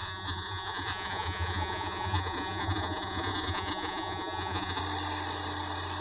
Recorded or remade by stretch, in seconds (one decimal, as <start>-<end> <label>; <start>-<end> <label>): 0.0-4.8 remade; 4.8-6.0 recorded